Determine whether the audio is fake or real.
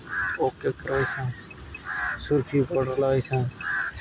real